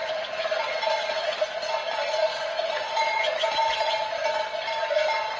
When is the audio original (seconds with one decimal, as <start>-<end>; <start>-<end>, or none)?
1.3-2.3; 3.2-5.4

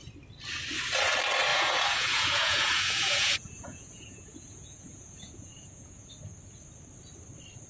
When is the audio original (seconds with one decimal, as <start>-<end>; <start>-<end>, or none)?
0.0-1.5; 6.1-7.7

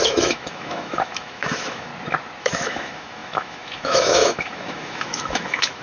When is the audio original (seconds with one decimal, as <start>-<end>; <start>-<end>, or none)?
1.9-2.4

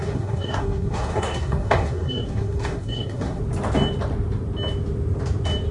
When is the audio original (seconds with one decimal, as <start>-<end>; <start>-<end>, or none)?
3.4-5.7

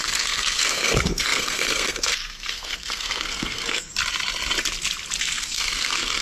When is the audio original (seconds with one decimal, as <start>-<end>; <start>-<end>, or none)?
3.9-5.2

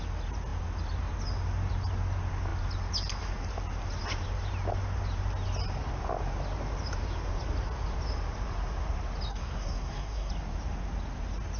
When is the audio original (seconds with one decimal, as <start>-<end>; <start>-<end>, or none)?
0.0-9.3; 10.3-11.6